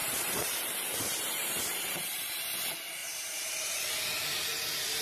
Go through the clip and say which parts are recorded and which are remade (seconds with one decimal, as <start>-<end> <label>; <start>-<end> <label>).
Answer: 0.0-2.4 remade; 2.4-3.0 recorded; 3.0-5.0 remade